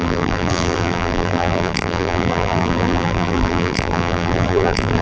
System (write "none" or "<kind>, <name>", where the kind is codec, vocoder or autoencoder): vocoder, BigVGAN v2